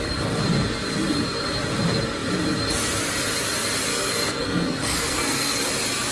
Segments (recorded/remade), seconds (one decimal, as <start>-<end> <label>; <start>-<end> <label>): 0.0-3.9 recorded; 3.9-5.6 remade; 5.6-6.1 recorded

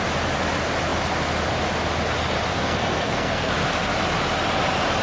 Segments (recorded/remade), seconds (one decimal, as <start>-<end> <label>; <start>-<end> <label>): 0.0-2.5 recorded; 2.5-3.5 remade; 3.5-5.0 recorded

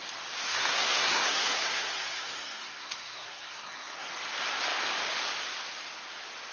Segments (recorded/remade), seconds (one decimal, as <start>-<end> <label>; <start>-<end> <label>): 0.0-0.5 recorded; 0.5-4.1 remade; 4.1-6.5 recorded

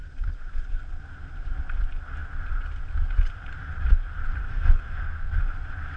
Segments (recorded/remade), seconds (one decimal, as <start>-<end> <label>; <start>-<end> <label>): 0.0-4.4 recorded; 4.4-5.4 remade; 5.4-6.0 recorded

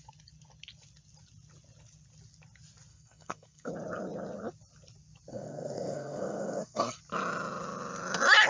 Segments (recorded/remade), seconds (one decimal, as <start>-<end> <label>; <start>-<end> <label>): 0.0-2.9 recorded; 2.9-3.7 remade; 3.7-5.3 recorded; 5.3-7.0 remade; 7.0-8.5 recorded

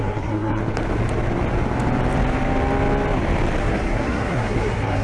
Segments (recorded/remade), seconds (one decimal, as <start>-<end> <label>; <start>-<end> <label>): 0.0-0.6 remade; 0.6-3.6 recorded; 3.6-5.0 remade